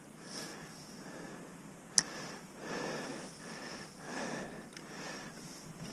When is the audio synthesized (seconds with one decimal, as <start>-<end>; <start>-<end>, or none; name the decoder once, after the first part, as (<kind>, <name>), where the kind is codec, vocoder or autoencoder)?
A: none